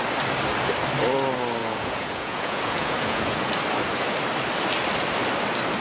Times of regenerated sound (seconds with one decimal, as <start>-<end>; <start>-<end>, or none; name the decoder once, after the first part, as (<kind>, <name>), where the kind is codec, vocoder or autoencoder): 1.6-3.5 (vocoder, Vocos)